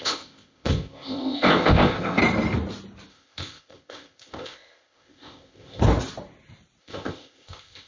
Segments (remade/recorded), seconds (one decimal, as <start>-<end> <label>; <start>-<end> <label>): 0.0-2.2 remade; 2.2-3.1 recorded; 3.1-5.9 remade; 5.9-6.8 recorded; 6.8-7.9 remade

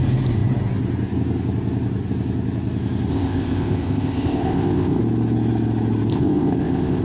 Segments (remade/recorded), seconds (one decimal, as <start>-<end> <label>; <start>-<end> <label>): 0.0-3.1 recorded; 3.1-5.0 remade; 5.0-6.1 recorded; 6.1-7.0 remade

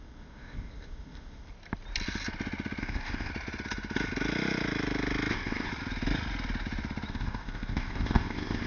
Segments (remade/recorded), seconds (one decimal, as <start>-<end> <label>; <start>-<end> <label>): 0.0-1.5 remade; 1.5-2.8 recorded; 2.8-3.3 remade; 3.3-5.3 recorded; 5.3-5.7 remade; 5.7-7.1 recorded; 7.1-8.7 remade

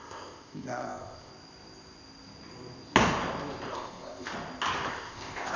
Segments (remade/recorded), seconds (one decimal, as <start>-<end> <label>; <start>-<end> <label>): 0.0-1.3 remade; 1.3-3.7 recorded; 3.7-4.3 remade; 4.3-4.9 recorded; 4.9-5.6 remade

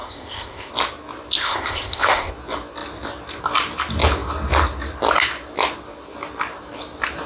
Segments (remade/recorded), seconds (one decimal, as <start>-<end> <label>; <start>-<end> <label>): 0.0-0.7 remade; 0.7-1.4 recorded; 1.4-2.3 remade; 2.3-7.3 recorded

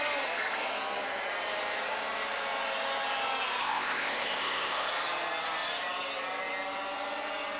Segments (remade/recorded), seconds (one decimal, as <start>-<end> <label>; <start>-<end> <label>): 0.0-3.6 recorded; 3.6-4.9 remade; 4.9-7.6 recorded

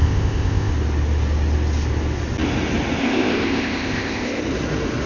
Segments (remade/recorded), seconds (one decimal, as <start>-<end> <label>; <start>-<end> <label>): 0.0-0.7 remade; 0.7-3.0 recorded; 3.0-4.4 remade; 4.4-5.1 recorded

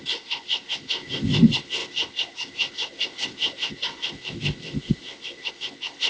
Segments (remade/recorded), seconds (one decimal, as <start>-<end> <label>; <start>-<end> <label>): 0.0-6.1 remade